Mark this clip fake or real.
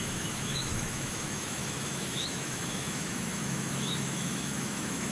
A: fake